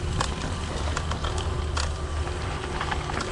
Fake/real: fake